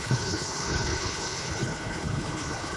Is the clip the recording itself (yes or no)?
no